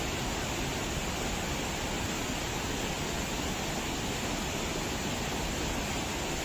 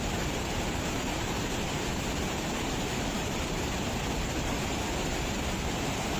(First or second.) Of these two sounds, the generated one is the second